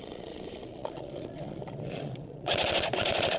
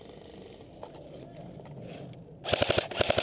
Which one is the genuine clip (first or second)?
second